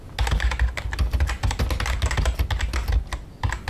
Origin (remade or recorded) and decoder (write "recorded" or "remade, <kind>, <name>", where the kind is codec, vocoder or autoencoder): recorded